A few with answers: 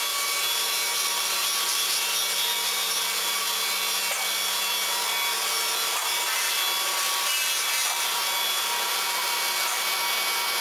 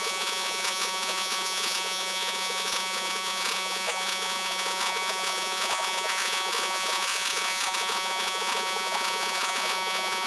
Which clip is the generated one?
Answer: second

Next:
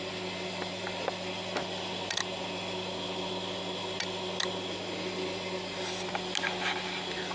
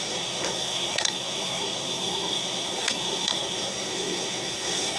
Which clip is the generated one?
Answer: second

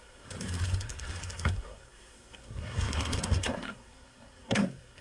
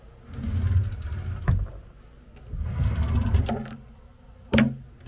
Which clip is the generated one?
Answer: first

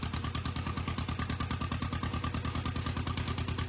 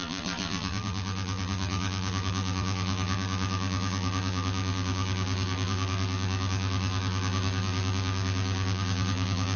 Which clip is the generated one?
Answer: second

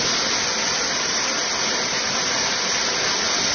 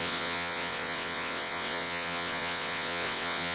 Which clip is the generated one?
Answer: second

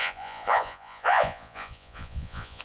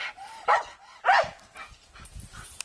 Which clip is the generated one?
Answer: first